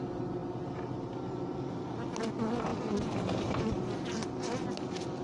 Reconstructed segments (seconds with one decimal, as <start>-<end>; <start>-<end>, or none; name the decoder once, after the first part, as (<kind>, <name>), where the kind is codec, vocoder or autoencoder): none